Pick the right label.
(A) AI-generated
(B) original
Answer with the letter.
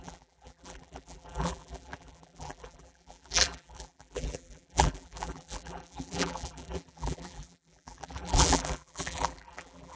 A